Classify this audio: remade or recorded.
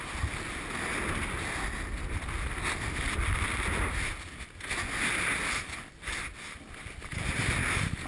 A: recorded